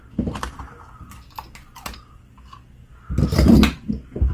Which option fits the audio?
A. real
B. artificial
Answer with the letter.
A